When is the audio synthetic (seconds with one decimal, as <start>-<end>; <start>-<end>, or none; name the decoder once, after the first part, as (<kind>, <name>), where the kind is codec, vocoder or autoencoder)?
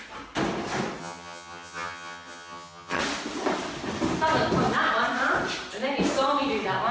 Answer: 1.0-3.0 (vocoder, HiFi-GAN)